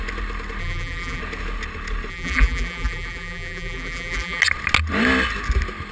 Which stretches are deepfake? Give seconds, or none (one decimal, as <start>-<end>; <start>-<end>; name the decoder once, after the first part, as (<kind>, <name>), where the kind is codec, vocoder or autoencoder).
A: 0.6-1.2 (vocoder, BigVGAN v2); 2.1-4.4